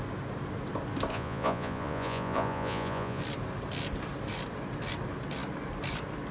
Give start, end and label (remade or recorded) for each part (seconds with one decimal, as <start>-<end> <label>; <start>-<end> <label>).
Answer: 0.0-1.1 recorded; 1.1-3.2 remade; 3.2-6.3 recorded